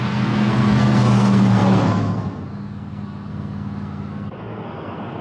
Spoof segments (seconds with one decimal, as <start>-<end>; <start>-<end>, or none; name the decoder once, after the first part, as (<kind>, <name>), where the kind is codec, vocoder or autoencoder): 0.0-5.2 (codec, SNAC)